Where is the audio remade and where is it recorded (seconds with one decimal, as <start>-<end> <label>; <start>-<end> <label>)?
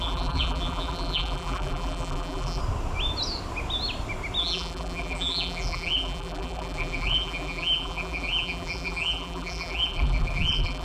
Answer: 0.0-2.6 remade; 2.6-4.4 recorded; 4.4-10.8 remade